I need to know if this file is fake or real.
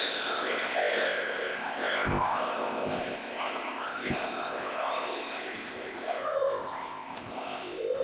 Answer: fake